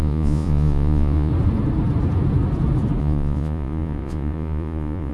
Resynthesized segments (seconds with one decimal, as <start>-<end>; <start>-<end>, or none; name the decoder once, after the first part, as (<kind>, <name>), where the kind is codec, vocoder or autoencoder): 0.0-1.3 (vocoder, Vocos); 3.0-5.1